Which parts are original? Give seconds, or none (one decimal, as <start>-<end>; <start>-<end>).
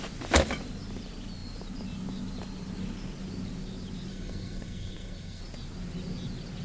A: 0.0-4.1; 5.4-6.6